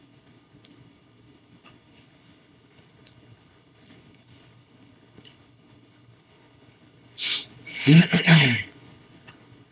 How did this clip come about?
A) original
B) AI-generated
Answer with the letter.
B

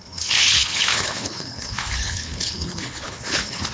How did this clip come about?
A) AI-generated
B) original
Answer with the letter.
A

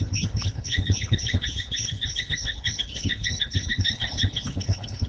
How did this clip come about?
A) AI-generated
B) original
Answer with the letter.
A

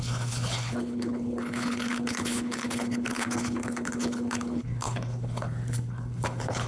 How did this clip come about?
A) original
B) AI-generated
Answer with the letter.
B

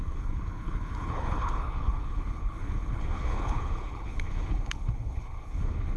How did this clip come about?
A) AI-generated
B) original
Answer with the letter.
A